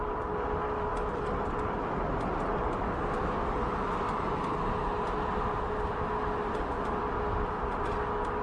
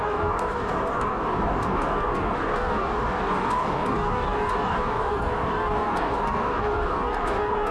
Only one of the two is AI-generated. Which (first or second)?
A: second